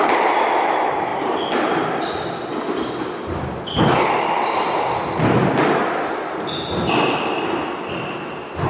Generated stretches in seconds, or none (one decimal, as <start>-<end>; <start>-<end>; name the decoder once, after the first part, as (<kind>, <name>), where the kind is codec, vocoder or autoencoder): 0.0-1.1 (vocoder, BigVGAN v2); 3.2-8.7